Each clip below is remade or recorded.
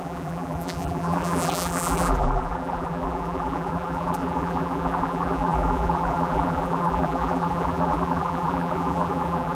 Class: remade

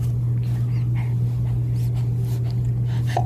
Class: recorded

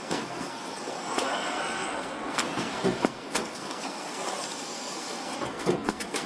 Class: remade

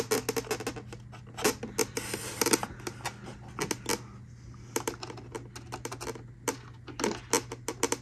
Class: recorded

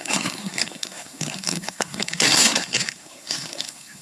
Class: remade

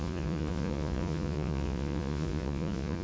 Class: remade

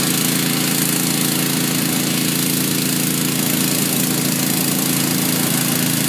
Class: recorded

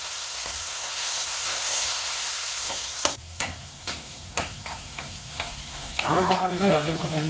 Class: remade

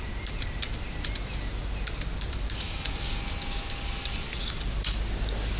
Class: recorded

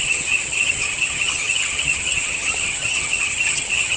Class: remade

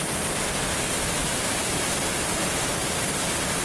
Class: recorded